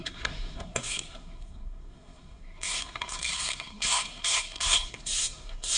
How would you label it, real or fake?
fake